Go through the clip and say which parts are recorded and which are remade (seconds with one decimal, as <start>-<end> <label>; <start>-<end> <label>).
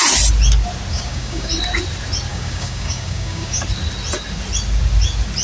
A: 0.0-0.9 recorded; 0.9-1.5 remade; 1.5-2.3 recorded; 2.3-3.6 remade; 3.6-5.4 recorded